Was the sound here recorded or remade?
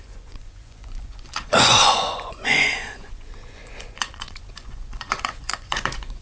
remade